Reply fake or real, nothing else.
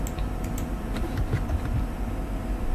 real